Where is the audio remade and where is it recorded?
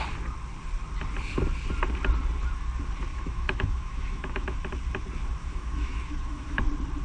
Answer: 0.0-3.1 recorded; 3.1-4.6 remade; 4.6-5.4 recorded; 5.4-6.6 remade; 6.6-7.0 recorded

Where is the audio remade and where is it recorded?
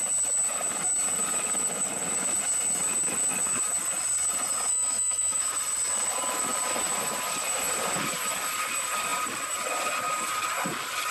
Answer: 0.0-4.7 recorded; 4.7-5.4 remade; 5.4-11.1 recorded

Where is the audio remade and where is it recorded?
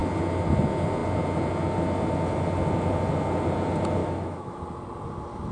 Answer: 0.0-4.0 recorded; 4.0-4.6 remade; 4.6-5.5 recorded